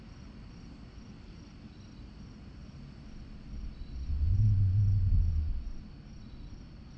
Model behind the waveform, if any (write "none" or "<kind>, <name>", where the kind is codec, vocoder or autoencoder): none